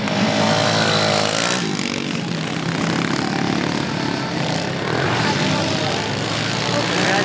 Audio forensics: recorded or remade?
recorded